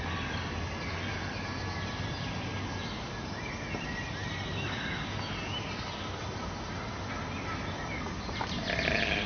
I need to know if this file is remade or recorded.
recorded